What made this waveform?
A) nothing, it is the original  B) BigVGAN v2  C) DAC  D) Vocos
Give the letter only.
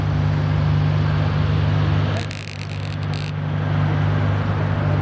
A